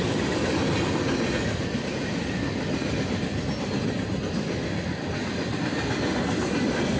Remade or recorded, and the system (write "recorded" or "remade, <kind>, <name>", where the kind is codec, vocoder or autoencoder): recorded